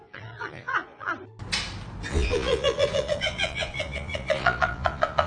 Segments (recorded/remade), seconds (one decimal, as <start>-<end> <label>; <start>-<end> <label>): 0.0-1.1 remade; 1.1-2.1 recorded; 2.1-5.3 remade